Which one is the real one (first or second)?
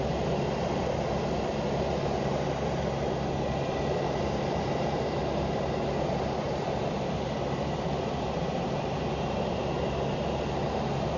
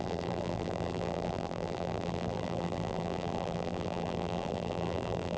first